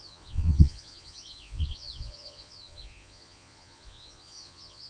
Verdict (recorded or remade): remade